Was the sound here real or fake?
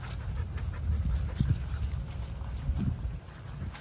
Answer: real